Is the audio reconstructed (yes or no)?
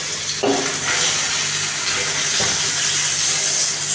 no